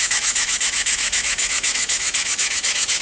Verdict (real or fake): fake